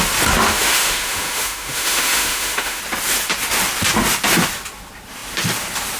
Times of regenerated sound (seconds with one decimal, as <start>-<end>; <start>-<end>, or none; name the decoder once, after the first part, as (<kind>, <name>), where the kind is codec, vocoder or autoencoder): 0.4-2.8 (autoencoder, DAC-VAE)